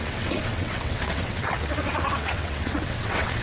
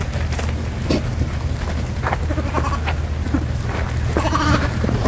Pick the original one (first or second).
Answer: second